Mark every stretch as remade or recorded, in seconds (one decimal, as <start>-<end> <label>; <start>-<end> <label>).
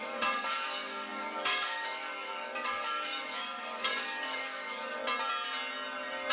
0.0-5.0 remade; 5.0-6.3 recorded